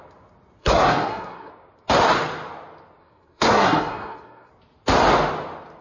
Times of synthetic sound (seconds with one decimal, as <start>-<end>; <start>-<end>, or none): 0.6-1.5; 3.0-4.5